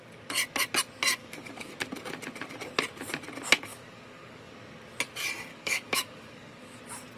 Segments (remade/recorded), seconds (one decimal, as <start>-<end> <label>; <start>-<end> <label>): 0.0-1.2 recorded; 1.2-1.7 remade; 1.7-3.7 recorded; 3.7-4.5 remade; 4.5-5.5 recorded; 5.5-6.8 remade; 6.8-7.2 recorded